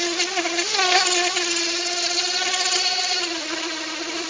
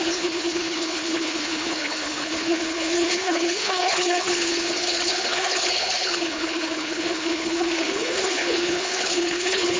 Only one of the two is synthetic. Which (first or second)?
second